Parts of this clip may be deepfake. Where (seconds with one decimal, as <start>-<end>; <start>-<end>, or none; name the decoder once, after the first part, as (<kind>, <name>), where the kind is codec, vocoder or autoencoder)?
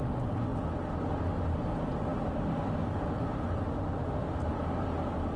none